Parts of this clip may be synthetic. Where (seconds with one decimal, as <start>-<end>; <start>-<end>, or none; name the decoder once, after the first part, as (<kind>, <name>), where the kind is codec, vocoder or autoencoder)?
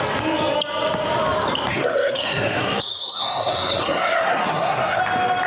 1.7-5.0 (codec, SNAC)